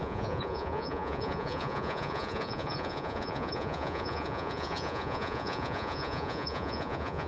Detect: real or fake fake